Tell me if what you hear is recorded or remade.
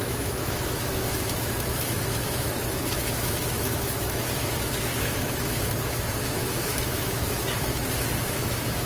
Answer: remade